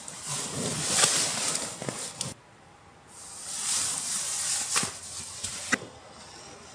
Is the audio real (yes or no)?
yes